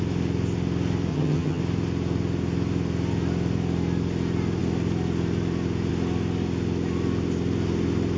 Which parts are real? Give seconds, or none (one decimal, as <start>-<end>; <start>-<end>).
0.0-1.1; 1.6-8.2

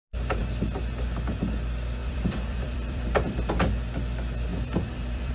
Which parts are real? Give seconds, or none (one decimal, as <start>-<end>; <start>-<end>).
0.0-2.0; 3.5-4.5

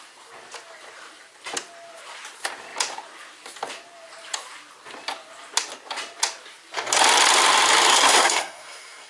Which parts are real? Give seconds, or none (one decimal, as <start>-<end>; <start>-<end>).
0.0-7.9

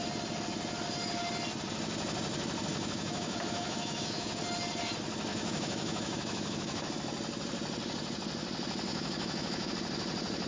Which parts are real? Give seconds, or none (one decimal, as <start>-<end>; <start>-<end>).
0.0-2.7; 4.4-5.3; 6.9-8.9; 9.7-10.5

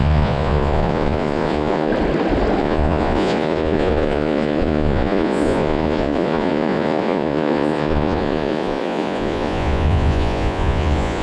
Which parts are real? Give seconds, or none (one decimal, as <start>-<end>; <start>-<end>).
1.9-2.6

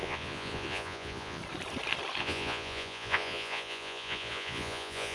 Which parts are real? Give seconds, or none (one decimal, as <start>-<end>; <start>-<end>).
1.4-2.2

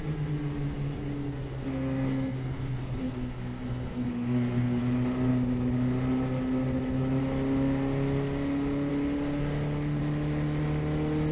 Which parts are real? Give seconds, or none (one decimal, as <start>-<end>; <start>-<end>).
0.0-1.7; 4.8-11.3